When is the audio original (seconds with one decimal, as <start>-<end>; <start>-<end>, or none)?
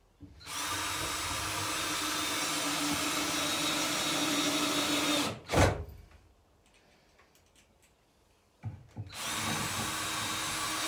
0.0-10.9